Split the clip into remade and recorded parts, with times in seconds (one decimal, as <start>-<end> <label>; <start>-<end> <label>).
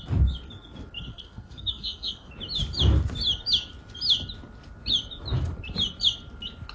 0.0-1.1 recorded; 1.1-2.3 remade; 2.3-6.7 recorded